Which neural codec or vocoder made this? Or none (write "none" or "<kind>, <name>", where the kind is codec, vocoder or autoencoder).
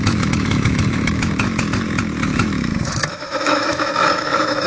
autoencoder, DAC-VAE